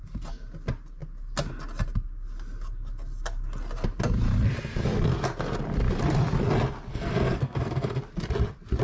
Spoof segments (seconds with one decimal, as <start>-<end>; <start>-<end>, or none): 6.9-8.0